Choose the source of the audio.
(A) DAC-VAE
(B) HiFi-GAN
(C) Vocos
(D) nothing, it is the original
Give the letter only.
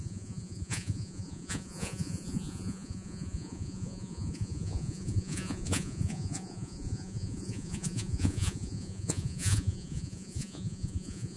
C